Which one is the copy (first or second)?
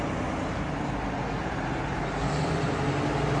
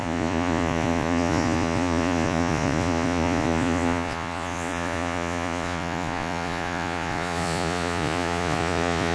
second